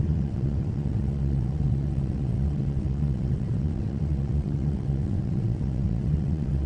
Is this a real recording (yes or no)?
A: no